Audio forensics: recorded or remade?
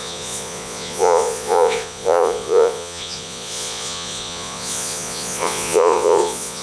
remade